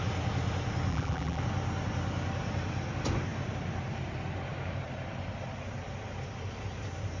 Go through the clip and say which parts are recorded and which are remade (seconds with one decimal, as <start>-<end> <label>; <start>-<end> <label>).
0.0-0.9 recorded; 0.9-1.4 remade; 1.4-7.2 recorded